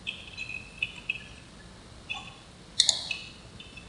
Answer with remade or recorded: recorded